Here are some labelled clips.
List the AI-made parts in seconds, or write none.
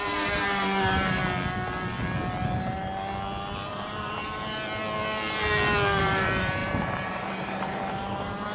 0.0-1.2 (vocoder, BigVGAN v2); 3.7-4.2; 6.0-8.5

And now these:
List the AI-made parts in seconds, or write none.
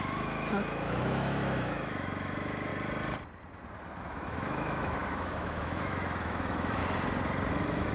0.0-2.7 (autoencoder, DAC-VAE); 4.0-6.8; 7.5-7.9